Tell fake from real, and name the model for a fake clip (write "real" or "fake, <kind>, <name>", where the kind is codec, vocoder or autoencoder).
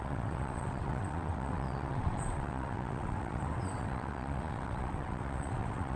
fake, vocoder, WaveNeXt